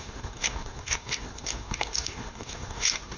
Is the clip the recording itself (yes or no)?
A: no